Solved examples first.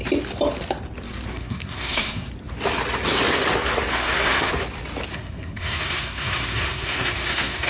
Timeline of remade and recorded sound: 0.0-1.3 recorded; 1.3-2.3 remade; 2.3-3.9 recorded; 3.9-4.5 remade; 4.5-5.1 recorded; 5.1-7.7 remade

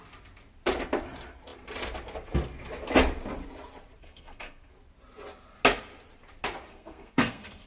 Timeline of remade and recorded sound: 0.0-4.0 recorded; 4.0-4.7 remade; 4.7-6.7 recorded; 6.7-7.7 remade